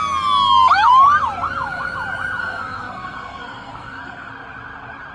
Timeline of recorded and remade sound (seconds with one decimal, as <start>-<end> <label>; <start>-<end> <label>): 0.0-2.4 recorded; 2.4-4.3 remade; 4.3-5.1 recorded